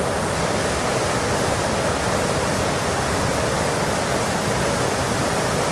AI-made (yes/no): no